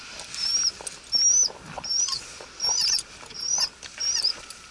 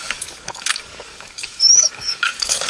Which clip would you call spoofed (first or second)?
second